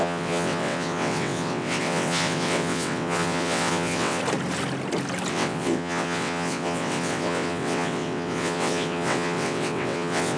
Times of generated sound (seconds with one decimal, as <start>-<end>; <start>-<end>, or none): 0.0-4.2; 5.3-10.4